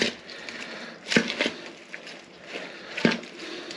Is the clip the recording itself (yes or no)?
yes